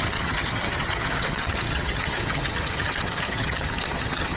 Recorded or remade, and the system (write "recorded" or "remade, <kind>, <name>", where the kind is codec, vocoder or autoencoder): remade, vocoder, HiFi-GAN